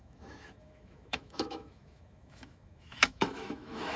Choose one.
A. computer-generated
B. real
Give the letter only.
A